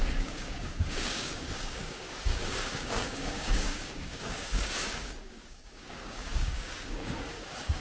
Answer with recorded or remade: remade